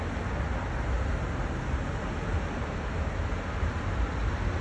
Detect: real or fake real